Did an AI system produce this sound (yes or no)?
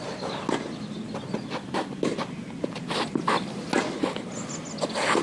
no